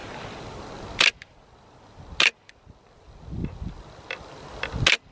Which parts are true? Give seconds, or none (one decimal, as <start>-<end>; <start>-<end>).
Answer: 0.0-5.1